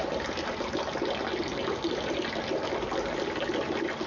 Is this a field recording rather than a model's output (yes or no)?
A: yes